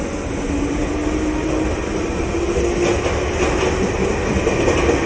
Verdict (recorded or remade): recorded